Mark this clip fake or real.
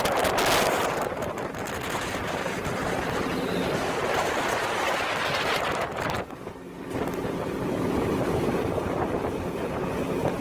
real